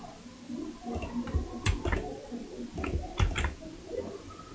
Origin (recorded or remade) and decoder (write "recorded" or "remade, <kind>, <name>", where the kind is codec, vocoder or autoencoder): recorded